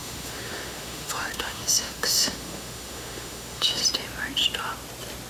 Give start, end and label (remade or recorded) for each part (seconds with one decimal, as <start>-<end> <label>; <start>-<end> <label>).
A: 0.0-3.8 remade; 3.8-5.3 recorded

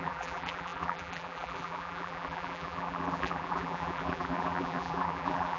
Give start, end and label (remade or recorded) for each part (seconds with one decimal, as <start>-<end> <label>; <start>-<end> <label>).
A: 0.0-5.6 remade

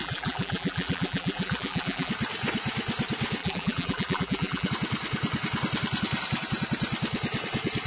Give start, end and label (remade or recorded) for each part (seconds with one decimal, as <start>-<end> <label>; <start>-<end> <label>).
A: 0.0-2.1 remade; 2.1-3.4 recorded; 3.4-4.7 remade; 4.7-7.9 recorded

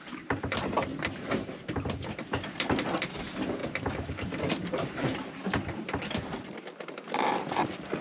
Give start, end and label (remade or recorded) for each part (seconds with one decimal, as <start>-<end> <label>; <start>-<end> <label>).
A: 0.0-0.9 remade; 0.9-2.1 recorded; 2.1-3.6 remade; 3.6-4.6 recorded; 4.6-8.0 remade

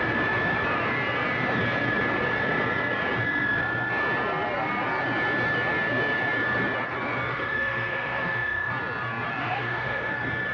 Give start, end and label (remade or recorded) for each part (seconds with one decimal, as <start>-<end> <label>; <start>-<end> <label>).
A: 0.0-7.3 recorded; 7.3-8.7 remade; 8.7-9.4 recorded; 9.4-10.1 remade; 10.1-10.5 recorded

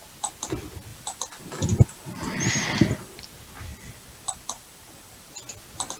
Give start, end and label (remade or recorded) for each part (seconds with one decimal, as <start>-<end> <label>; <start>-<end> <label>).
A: 0.0-0.9 recorded; 0.9-3.2 remade; 3.2-3.7 recorded; 3.7-5.3 remade; 5.3-6.0 recorded